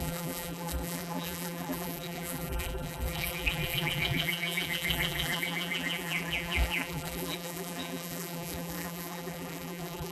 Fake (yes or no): yes